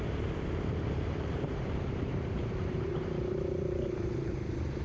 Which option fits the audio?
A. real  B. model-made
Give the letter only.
B